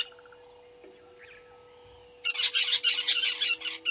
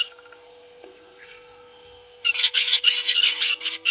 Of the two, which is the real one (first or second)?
first